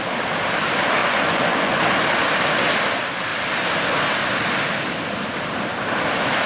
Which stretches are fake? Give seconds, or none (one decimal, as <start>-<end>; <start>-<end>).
1.0-1.8

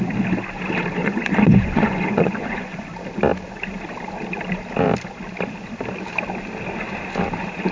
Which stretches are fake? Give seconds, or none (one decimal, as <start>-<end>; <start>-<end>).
1.0-2.9

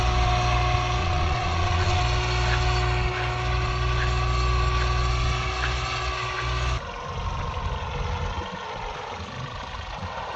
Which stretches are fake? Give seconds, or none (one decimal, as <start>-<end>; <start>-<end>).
1.0-2.0

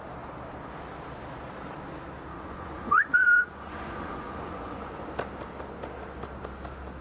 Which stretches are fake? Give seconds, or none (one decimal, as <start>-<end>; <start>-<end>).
2.3-4.9

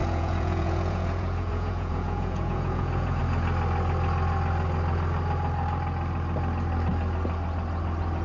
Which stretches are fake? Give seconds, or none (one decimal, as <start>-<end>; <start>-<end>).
0.0-3.2